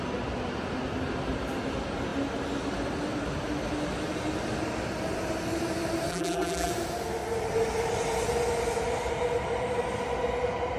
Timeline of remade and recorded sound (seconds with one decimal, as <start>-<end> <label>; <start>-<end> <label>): 0.0-6.1 recorded; 6.1-6.7 remade; 6.7-10.8 recorded